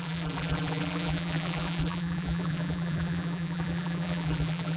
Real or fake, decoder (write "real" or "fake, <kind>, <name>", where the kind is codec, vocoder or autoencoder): fake, vocoder, BigVGAN v2